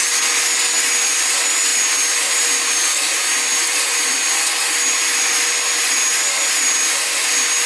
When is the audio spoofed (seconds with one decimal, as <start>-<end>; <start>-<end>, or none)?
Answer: none